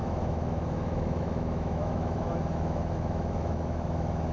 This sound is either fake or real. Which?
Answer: fake